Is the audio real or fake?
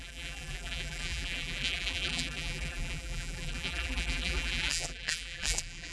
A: fake